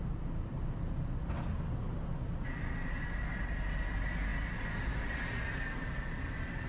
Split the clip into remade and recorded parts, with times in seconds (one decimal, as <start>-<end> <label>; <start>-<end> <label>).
0.0-6.7 recorded